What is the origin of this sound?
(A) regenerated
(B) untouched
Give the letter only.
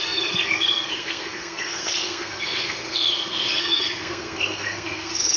A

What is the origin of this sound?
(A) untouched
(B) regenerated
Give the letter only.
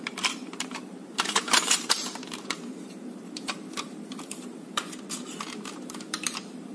B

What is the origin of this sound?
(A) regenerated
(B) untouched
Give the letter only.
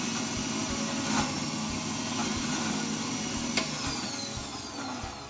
B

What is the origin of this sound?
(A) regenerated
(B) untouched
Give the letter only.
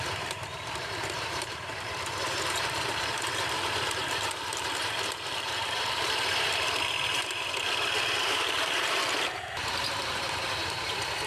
A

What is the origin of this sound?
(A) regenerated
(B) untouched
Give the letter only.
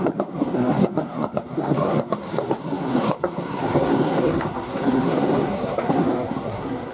A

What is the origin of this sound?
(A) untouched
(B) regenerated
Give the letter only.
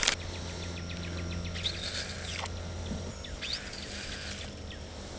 A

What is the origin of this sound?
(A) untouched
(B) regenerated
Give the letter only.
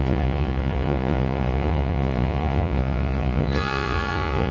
B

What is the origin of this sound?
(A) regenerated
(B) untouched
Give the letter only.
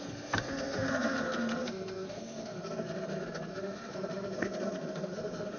A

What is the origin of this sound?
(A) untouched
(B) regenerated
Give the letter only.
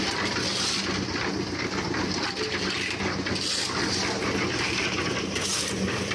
A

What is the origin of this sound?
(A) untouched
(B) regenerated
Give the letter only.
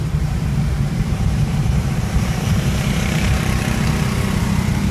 B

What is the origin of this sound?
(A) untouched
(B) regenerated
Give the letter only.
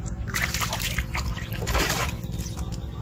A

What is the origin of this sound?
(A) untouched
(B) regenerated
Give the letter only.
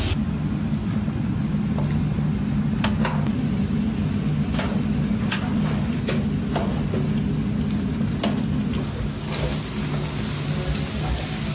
A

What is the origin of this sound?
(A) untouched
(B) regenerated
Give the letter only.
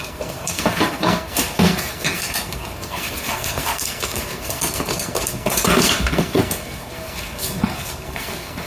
B